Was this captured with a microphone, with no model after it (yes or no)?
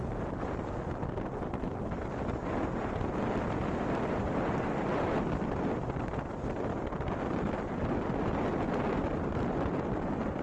yes